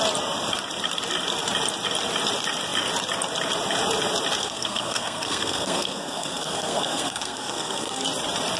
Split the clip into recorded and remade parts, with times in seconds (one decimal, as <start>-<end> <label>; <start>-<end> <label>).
0.0-4.4 recorded; 4.4-8.0 remade; 8.0-8.6 recorded